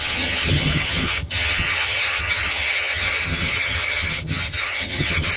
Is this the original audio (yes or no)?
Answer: no